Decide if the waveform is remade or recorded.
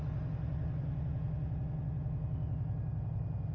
recorded